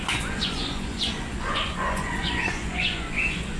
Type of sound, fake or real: fake